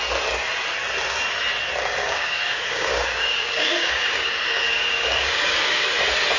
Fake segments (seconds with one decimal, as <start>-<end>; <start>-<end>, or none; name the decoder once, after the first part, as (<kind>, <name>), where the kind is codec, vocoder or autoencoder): 2.0-5.8 (codec, DAC)